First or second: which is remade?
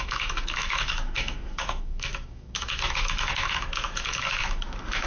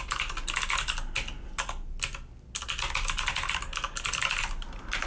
first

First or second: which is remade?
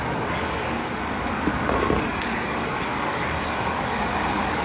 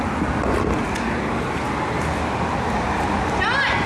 first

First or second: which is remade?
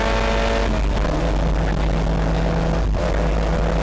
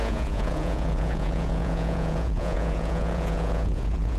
second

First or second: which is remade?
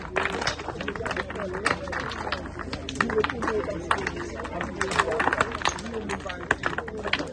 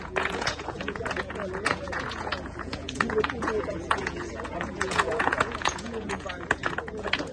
second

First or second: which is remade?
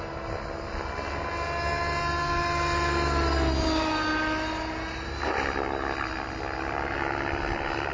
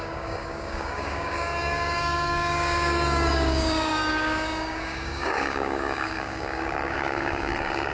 second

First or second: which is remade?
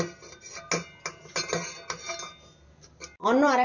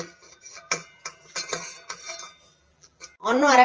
second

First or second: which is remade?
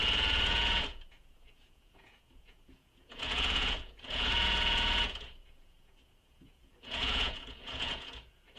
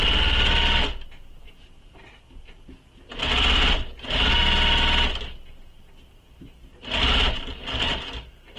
first